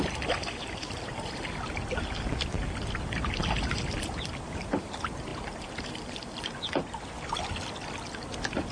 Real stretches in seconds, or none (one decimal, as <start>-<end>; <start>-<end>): 0.0-8.7